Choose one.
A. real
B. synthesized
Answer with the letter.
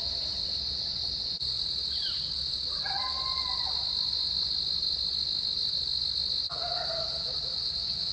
A